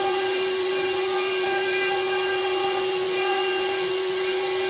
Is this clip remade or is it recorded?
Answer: remade